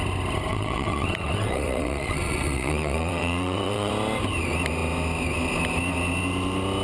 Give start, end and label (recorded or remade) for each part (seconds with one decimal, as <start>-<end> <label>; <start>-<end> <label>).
0.0-0.5 recorded; 0.5-3.9 remade; 3.9-6.8 recorded